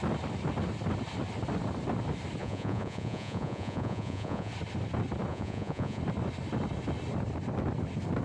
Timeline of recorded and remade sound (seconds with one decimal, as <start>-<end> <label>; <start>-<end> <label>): 0.0-2.4 recorded; 2.4-4.5 remade; 4.5-5.3 recorded; 5.3-6.0 remade; 6.0-8.2 recorded